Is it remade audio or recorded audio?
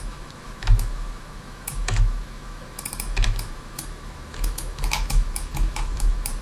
remade